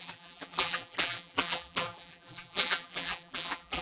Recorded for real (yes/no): no